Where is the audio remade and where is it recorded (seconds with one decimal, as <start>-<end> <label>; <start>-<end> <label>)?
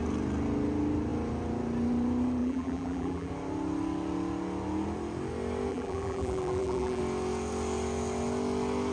0.0-2.4 recorded; 2.4-3.3 remade; 3.3-5.7 recorded; 5.7-7.0 remade; 7.0-8.9 recorded